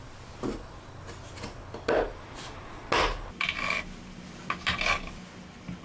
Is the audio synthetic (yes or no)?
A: no